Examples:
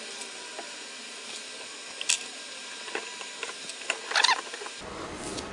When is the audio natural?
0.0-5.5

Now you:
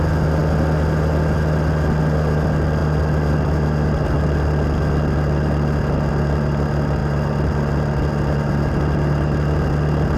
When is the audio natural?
0.0-10.2

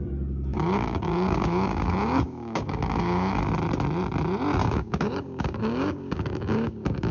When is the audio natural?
0.0-0.5; 3.4-4.6

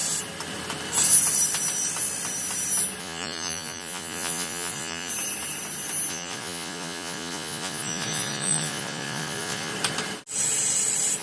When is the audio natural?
0.0-3.0; 5.1-6.1; 9.7-11.2

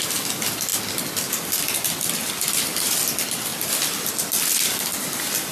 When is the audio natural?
0.0-5.5